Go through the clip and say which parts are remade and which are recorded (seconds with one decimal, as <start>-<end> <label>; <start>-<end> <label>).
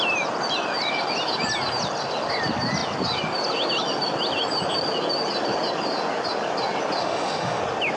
0.0-7.0 recorded; 7.0-7.6 remade; 7.6-8.0 recorded